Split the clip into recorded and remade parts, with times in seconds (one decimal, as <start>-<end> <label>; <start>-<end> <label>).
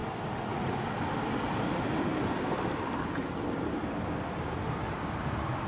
0.0-5.7 recorded